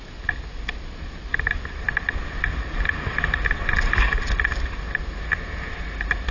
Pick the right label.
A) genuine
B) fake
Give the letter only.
A